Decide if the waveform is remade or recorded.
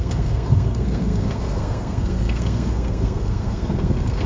remade